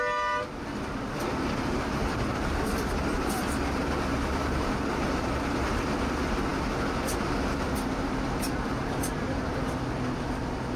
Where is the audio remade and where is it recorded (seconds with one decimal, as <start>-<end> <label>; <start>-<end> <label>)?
0.0-2.3 recorded; 2.3-6.1 remade; 6.1-10.8 recorded